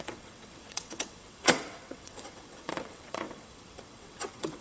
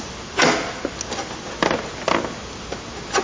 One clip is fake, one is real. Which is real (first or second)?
second